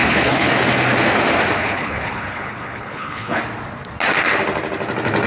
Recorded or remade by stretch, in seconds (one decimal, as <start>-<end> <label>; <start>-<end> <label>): 0.0-0.5 remade; 0.5-1.6 recorded; 1.6-3.4 remade; 3.4-5.3 recorded